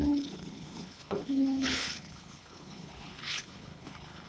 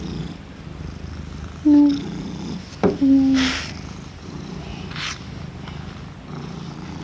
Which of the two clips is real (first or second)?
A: second